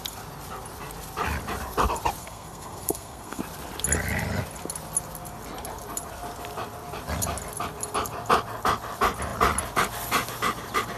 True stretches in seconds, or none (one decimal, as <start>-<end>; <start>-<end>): 0.0-2.2; 3.4-11.0